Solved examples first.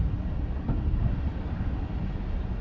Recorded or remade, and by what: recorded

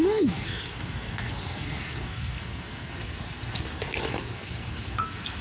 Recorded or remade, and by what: remade, codec, SNAC